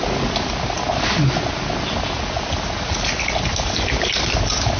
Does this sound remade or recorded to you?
recorded